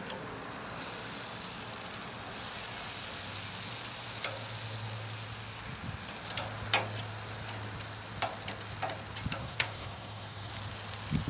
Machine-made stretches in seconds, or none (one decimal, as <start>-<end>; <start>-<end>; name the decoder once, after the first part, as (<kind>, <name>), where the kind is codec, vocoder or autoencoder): 9.4-10.5 (codec, SNAC)